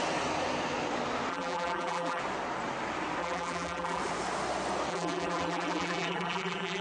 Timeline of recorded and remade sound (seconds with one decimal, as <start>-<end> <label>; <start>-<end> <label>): 0.0-1.3 recorded; 1.3-2.2 remade; 2.2-3.2 recorded; 3.2-4.0 remade; 4.0-4.9 recorded; 4.9-6.8 remade